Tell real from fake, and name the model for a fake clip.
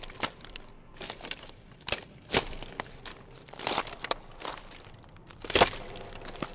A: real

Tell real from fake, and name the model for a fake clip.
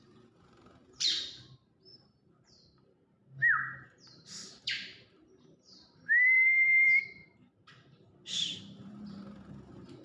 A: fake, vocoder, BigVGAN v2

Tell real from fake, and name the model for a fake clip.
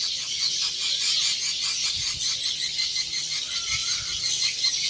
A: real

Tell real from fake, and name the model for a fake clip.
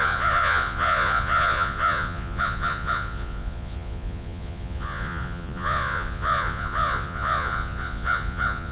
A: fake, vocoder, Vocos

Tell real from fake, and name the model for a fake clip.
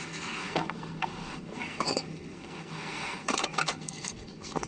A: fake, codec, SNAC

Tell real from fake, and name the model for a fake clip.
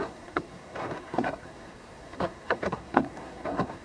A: fake, codec, SNAC